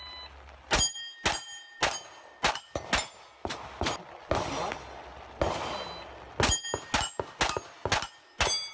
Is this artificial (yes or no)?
no